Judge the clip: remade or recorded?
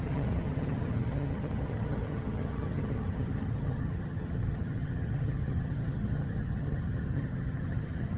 remade